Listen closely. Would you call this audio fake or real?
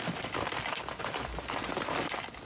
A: real